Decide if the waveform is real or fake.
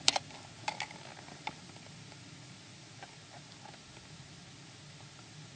real